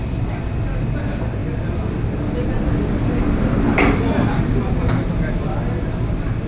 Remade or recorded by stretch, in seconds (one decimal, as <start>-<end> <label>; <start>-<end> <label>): 0.0-6.5 recorded